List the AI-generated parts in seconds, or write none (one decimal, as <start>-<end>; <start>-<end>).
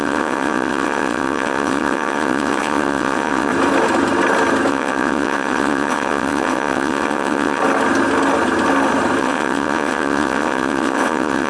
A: 0.0-3.5; 4.7-7.6; 9.2-11.5